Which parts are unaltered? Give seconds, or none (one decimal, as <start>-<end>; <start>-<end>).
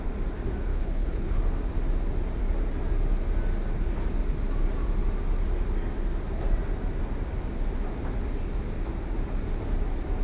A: 0.0-0.7; 1.4-10.2